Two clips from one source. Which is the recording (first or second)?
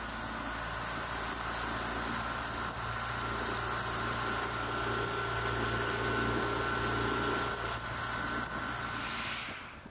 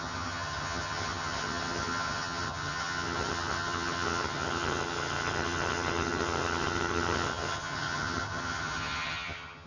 first